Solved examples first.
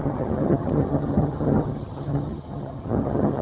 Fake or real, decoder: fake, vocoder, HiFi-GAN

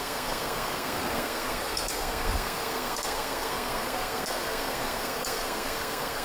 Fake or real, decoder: fake, codec, SNAC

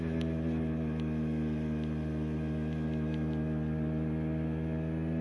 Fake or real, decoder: real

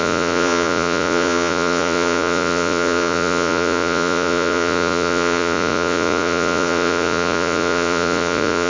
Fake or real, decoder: fake, vocoder, Vocos